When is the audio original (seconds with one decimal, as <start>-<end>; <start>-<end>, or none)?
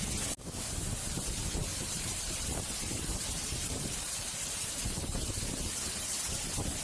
0.0-1.7; 5.5-6.8